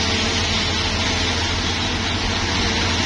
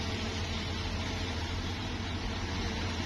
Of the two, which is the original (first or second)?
first